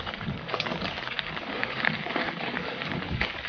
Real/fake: fake